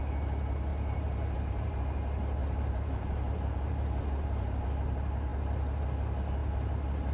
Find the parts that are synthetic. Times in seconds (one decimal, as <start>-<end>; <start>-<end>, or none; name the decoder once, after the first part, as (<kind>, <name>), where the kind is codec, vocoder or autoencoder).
0.7-1.8 (vocoder, BigVGAN v2); 2.4-4.7